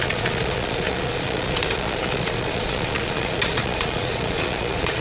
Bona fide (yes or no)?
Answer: no